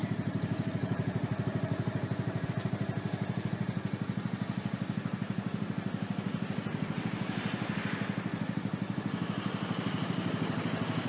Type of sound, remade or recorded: recorded